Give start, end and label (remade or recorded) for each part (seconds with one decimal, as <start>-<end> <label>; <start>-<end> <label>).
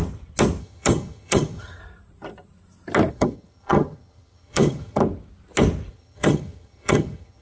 0.0-0.6 recorded; 0.6-1.8 remade; 1.8-3.1 recorded; 3.1-5.0 remade; 5.0-5.9 recorded; 5.9-7.4 remade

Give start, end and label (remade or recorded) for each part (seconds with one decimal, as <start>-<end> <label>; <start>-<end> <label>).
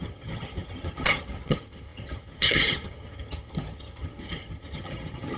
0.0-5.4 remade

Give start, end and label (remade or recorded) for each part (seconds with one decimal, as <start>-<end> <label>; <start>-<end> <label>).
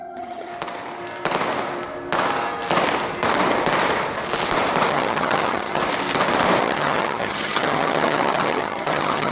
0.0-0.5 remade; 0.5-4.9 recorded; 4.9-5.8 remade; 5.8-6.6 recorded; 6.6-9.3 remade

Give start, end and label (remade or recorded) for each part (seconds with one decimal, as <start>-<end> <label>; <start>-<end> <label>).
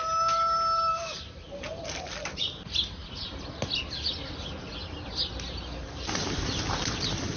0.0-7.4 recorded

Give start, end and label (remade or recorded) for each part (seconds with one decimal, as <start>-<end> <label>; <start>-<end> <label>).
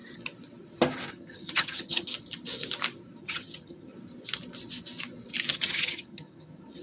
0.0-1.1 recorded; 1.1-2.1 remade; 2.1-3.2 recorded; 3.2-3.9 remade; 3.9-5.5 recorded; 5.5-6.8 remade